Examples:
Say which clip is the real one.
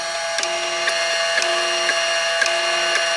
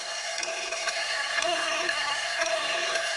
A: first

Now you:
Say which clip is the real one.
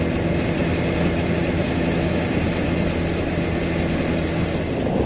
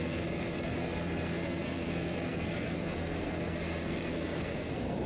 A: first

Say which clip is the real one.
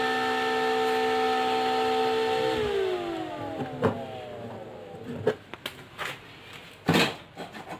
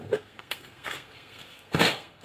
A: first